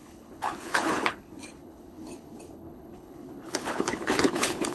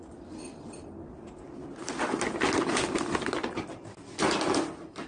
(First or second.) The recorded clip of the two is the second